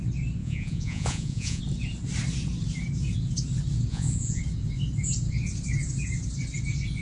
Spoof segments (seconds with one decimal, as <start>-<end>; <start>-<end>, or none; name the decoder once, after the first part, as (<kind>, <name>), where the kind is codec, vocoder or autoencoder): 0.4-1.6 (vocoder, Vocos); 3.9-4.4